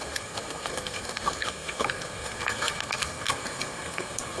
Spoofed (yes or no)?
yes